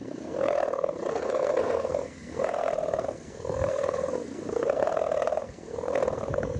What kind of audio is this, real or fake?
fake